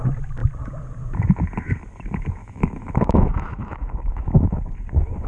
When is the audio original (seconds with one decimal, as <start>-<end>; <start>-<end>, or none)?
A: 0.0-2.4; 4.6-5.3